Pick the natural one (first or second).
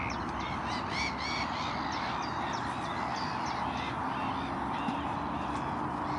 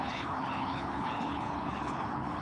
first